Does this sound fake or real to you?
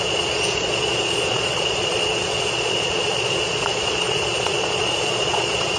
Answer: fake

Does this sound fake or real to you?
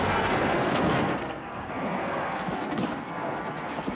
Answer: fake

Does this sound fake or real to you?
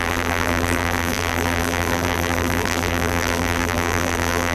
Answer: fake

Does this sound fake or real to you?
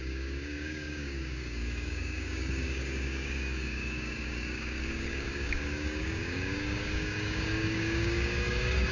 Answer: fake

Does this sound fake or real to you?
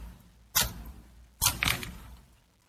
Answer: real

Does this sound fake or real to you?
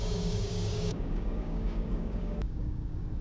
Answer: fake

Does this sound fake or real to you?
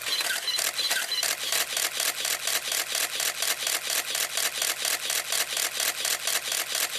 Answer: real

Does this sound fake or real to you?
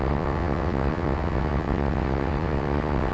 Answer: fake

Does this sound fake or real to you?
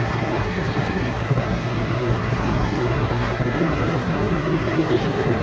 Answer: fake